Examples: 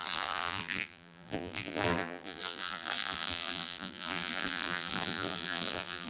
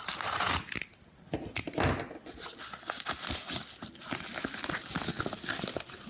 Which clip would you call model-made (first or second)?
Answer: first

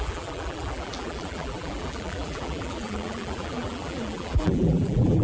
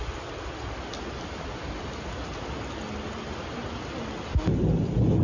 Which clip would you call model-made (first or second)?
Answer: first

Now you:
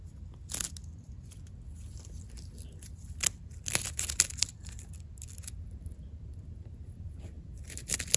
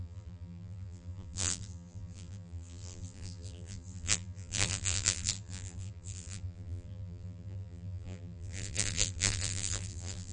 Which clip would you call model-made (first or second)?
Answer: second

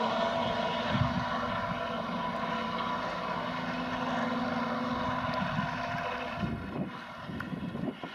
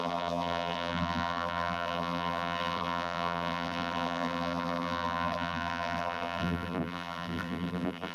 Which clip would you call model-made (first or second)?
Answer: second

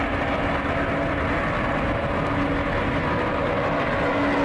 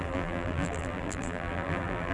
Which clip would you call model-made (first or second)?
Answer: second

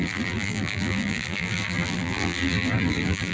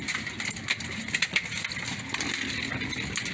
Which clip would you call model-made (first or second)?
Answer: first